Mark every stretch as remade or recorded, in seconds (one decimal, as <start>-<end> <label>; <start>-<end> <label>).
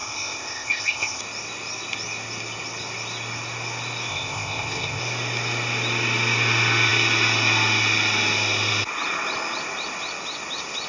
0.0-1.2 remade; 1.2-4.1 recorded; 4.1-5.0 remade; 5.0-10.9 recorded